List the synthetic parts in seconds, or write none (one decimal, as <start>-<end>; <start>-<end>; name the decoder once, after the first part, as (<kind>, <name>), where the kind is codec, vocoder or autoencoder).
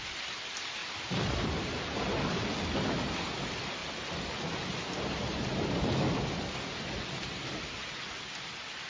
none